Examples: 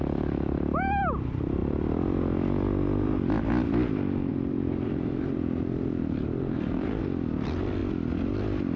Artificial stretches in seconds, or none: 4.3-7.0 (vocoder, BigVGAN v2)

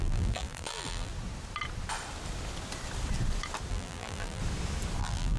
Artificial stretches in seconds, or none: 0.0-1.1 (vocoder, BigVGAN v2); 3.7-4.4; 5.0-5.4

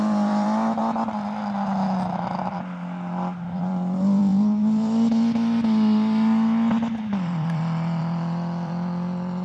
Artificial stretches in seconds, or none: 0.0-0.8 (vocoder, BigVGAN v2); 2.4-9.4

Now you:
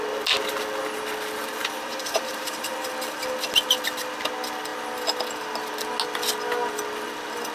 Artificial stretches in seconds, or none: 1.4-2.9 (vocoder, BigVGAN v2)